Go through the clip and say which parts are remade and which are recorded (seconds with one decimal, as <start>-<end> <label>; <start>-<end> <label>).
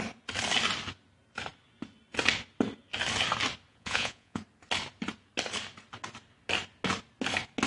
0.0-3.7 recorded; 3.7-4.4 remade; 4.4-7.7 recorded